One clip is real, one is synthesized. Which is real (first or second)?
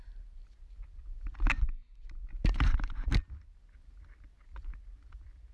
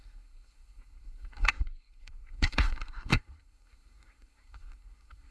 first